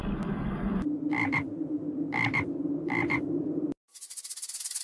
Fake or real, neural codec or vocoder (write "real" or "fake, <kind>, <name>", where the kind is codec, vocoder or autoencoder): fake, vocoder, BigVGAN v2